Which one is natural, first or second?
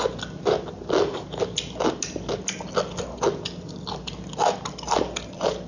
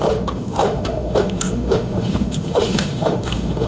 first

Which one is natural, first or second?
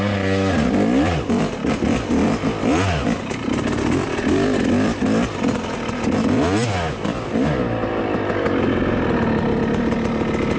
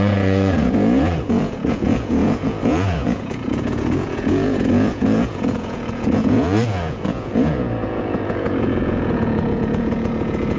first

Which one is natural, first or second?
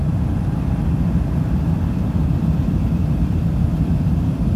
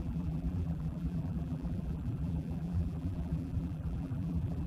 first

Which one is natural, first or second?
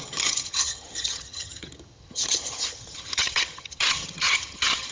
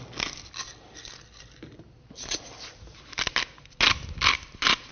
second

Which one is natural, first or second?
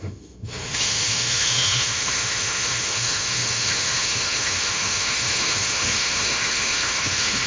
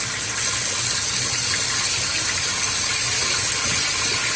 second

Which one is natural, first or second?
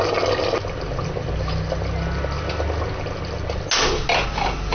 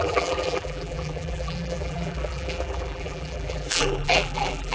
first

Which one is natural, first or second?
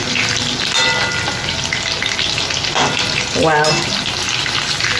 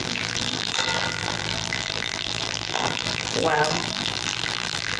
first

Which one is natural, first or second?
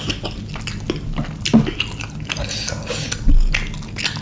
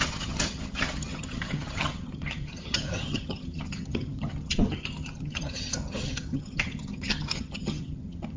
first